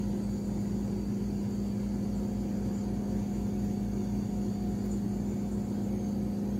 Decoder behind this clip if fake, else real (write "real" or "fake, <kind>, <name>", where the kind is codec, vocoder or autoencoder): real